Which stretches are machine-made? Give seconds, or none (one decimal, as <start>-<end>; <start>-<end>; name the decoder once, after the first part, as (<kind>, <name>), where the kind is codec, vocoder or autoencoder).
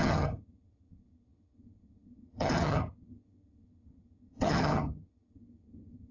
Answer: 0.0-6.1 (vocoder, HiFi-GAN)